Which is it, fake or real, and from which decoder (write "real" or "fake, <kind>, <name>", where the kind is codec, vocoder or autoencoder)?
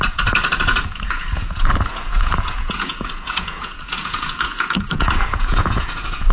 fake, vocoder, Vocos